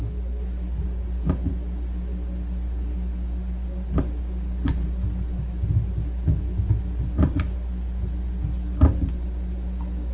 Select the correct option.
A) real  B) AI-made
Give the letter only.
A